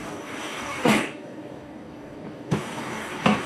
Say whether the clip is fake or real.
fake